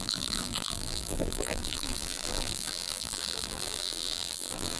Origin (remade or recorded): remade